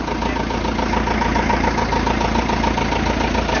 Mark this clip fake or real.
real